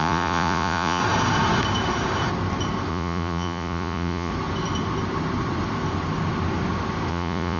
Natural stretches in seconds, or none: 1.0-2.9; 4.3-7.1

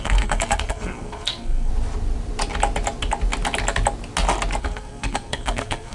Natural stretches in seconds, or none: 1.7-4.6